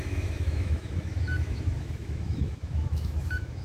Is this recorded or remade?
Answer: remade